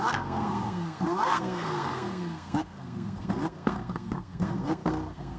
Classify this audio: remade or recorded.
remade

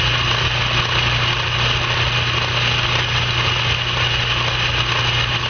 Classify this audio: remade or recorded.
recorded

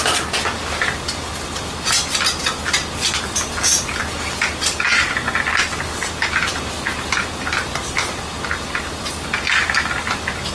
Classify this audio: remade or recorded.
recorded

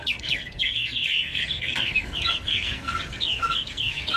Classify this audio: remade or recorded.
remade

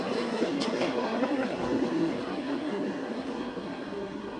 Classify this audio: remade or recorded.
remade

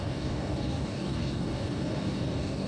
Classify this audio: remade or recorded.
remade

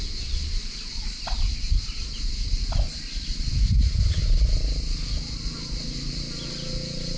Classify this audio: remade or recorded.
recorded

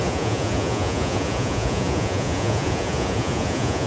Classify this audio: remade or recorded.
remade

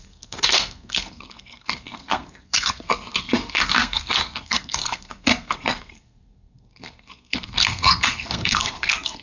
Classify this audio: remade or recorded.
remade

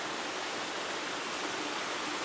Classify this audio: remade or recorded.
recorded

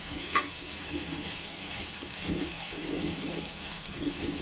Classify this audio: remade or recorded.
remade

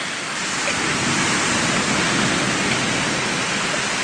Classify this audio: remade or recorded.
recorded